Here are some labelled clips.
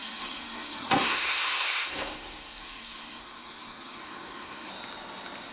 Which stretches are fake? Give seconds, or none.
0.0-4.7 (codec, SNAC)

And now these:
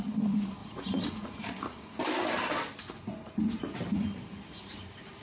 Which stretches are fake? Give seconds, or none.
0.6-2.0 (vocoder, Vocos)

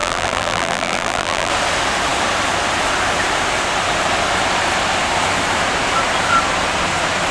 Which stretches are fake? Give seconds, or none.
0.0-1.5 (vocoder, BigVGAN v2)